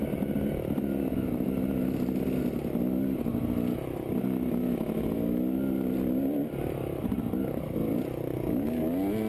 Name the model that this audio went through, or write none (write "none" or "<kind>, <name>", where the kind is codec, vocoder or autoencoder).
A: none